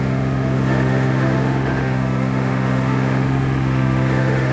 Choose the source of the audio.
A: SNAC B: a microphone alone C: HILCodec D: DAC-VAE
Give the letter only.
D